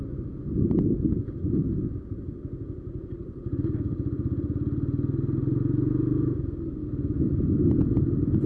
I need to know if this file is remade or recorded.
recorded